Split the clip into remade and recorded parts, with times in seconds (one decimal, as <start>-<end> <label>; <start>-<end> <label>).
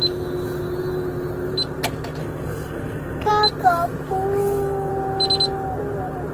0.0-2.2 recorded; 2.2-3.3 remade; 3.3-4.4 recorded; 4.4-4.9 remade; 4.9-6.3 recorded